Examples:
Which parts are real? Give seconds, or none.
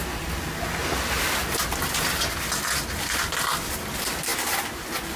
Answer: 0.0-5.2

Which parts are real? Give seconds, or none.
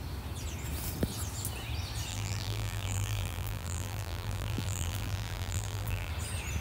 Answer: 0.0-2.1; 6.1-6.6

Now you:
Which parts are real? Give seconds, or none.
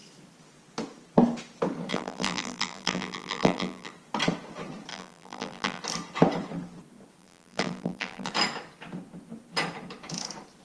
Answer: 0.0-1.9; 3.9-4.9; 5.8-7.2; 8.3-10.6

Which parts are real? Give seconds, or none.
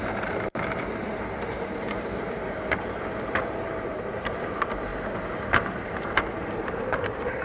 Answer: none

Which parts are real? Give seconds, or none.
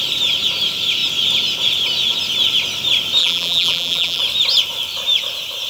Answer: 0.0-3.2; 4.2-5.7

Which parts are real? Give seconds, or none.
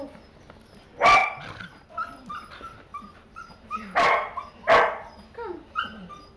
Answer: 0.0-2.9; 4.5-6.4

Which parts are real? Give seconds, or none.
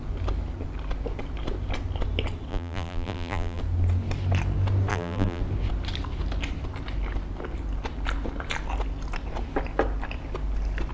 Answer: 0.0-2.5; 3.6-4.9; 5.4-10.9